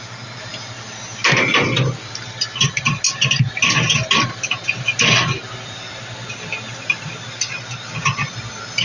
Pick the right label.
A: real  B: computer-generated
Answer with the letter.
A